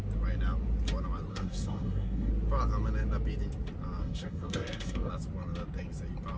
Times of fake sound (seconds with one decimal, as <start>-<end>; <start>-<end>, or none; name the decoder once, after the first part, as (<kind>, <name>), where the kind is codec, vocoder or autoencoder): 1.3-2.3 (codec, SNAC); 4.0-5.1